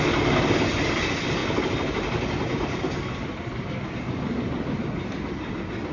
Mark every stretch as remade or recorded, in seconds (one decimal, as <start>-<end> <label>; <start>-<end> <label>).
0.0-5.9 recorded